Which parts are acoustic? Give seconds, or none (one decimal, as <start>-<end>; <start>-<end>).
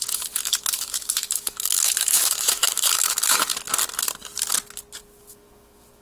3.5-5.0